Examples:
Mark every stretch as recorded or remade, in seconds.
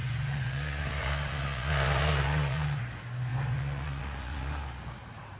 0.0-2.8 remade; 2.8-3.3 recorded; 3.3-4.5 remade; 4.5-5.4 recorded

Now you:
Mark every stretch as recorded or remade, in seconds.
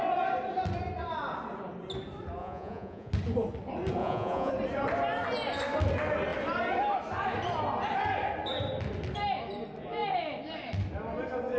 0.0-2.4 recorded; 2.4-3.1 remade; 3.1-4.0 recorded; 4.0-4.5 remade; 4.5-11.6 recorded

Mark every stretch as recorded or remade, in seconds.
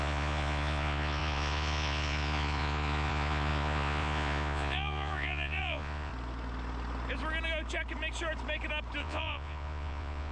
0.0-6.1 remade; 6.1-9.0 recorded; 9.0-10.3 remade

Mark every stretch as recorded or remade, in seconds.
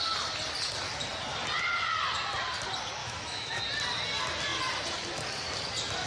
0.0-3.0 recorded; 3.0-3.6 remade; 3.6-6.1 recorded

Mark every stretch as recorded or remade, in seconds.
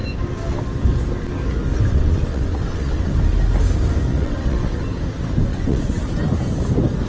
0.0-1.9 recorded; 1.9-3.1 remade; 3.1-4.1 recorded; 4.1-4.8 remade; 4.8-5.5 recorded; 5.5-6.1 remade; 6.1-7.1 recorded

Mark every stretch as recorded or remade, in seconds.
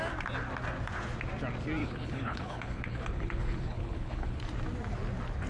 0.0-1.8 recorded; 1.8-4.4 remade; 4.4-5.5 recorded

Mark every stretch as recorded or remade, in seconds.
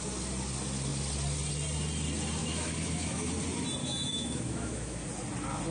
0.0-2.4 recorded; 2.4-3.3 remade; 3.3-3.8 recorded; 3.8-5.0 remade; 5.0-5.7 recorded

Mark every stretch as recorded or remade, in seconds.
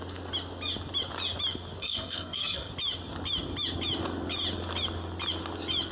0.0-1.8 recorded; 1.8-2.7 remade; 2.7-5.9 recorded